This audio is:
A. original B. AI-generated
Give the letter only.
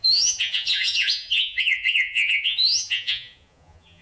B